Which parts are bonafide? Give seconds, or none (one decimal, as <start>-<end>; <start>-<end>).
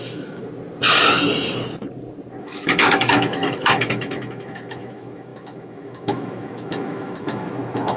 0.4-2.4